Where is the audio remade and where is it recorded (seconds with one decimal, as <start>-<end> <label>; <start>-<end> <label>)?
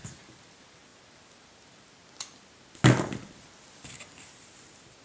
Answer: 0.0-5.0 recorded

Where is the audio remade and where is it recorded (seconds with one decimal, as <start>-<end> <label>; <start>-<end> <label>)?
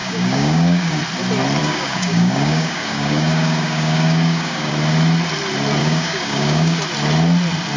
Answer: 0.0-1.0 remade; 1.0-1.6 recorded; 1.6-4.7 remade; 4.7-5.8 recorded; 5.8-6.8 remade; 6.8-7.8 recorded